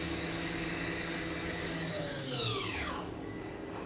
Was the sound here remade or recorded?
remade